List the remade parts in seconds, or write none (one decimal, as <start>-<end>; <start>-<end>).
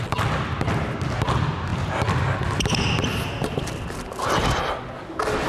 none